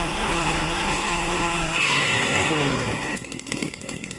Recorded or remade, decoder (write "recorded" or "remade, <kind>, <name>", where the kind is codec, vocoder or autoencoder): remade, codec, SNAC